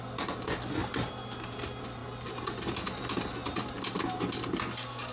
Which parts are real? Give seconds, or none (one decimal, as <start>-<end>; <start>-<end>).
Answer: 0.0-0.8; 1.5-5.1

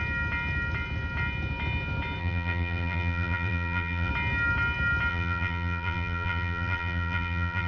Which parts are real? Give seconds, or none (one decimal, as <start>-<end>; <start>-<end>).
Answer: 0.0-2.2; 4.1-5.1

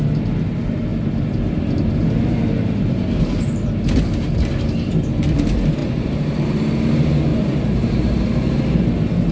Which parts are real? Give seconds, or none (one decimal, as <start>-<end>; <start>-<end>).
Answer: 0.0-0.9; 3.7-5.8; 6.6-7.3; 8.6-9.3

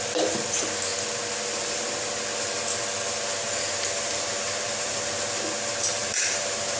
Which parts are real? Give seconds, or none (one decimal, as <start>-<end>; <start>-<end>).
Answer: 0.0-3.4; 5.4-6.0

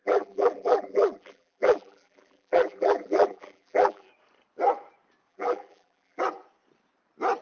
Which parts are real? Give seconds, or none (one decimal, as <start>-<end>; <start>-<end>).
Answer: 4.1-5.3; 6.2-7.4

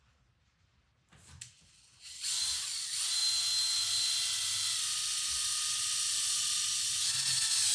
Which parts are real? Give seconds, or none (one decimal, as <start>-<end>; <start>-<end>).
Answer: 0.0-7.7

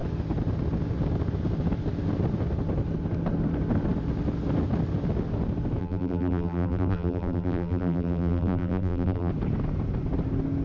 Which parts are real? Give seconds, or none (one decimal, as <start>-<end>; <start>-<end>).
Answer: 0.0-5.8; 9.3-10.6

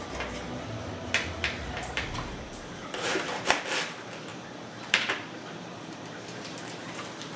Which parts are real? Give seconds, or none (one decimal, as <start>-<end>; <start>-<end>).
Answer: 0.0-1.6; 3.6-4.3; 6.6-7.4